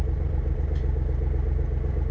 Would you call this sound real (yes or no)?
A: no